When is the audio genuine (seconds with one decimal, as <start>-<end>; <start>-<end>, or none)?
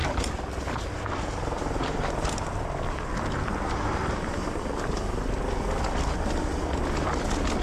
4.6-7.6